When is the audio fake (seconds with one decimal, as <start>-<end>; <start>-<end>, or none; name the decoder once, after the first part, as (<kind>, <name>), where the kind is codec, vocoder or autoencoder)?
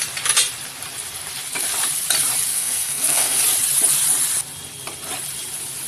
2.5-3.4 (codec, SNAC)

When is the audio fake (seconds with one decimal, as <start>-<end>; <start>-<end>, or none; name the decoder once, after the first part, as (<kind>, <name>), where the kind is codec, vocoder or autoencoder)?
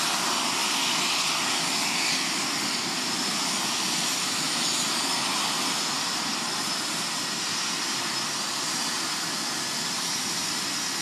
none